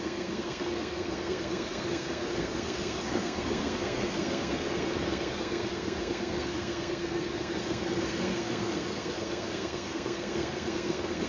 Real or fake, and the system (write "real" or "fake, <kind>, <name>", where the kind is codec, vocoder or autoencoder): fake, codec, SNAC